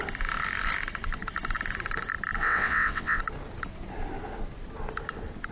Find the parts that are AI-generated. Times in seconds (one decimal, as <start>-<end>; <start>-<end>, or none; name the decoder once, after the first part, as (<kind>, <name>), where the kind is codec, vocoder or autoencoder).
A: 2.4-3.2 (vocoder, WaveNeXt)